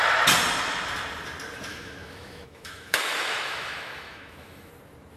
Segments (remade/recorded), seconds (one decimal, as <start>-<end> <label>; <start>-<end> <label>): 0.0-1.7 recorded; 1.7-4.7 remade; 4.7-5.2 recorded